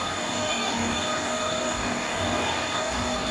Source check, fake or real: fake